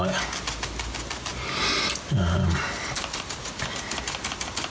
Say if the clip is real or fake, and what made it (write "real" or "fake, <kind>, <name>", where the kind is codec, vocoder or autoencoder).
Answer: real